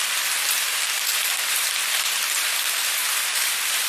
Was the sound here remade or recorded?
remade